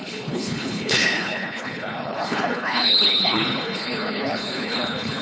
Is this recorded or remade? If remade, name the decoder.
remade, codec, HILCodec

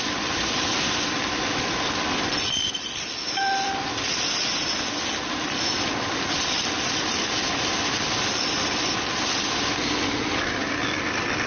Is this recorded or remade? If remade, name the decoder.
recorded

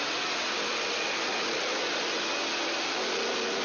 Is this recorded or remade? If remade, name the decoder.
recorded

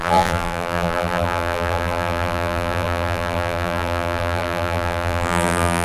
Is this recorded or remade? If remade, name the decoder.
remade, vocoder, BigVGAN v2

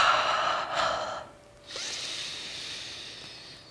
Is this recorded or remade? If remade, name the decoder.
recorded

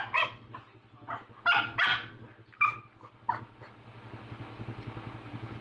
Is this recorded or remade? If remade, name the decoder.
recorded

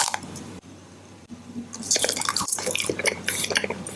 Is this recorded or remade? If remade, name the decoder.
remade, vocoder, BigVGAN v2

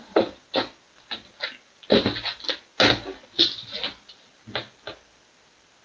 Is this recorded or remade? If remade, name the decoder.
recorded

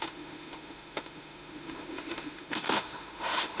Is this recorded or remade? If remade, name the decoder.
remade, autoencoder, DAC-VAE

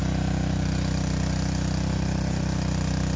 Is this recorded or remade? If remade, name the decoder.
recorded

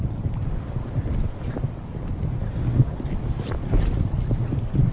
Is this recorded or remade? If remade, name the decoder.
recorded